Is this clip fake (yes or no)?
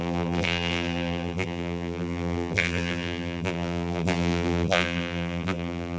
yes